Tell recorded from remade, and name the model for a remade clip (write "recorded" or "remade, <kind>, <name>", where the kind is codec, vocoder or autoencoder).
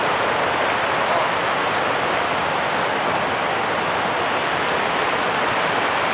recorded